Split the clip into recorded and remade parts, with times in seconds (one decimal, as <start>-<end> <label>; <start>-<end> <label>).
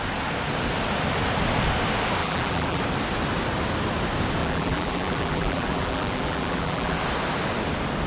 0.0-2.2 recorded; 2.2-2.8 remade; 2.8-4.4 recorded; 4.4-7.0 remade; 7.0-8.1 recorded